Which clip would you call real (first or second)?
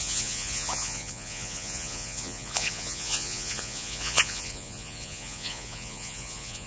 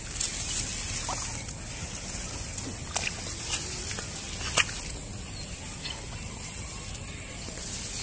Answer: second